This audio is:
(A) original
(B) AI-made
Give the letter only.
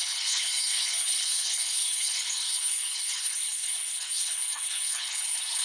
B